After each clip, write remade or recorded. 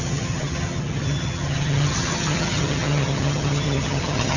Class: remade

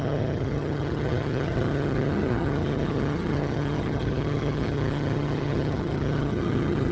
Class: remade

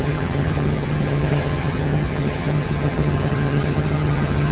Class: remade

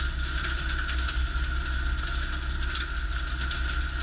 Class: recorded